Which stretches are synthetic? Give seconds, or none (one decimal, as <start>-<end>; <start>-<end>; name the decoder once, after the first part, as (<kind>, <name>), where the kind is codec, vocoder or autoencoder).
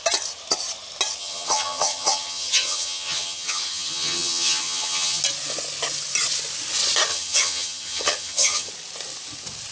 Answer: 1.2-5.2 (vocoder, HiFi-GAN); 7.1-8.7